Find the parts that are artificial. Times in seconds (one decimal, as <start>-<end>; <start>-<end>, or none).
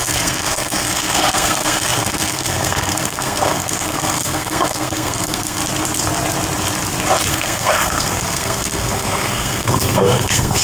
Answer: 0.0-5.6; 7.3-10.6